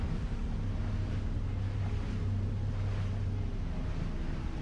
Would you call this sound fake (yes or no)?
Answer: no